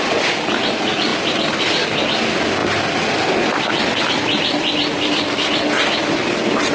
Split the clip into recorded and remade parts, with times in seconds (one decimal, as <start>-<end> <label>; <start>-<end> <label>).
0.0-6.7 recorded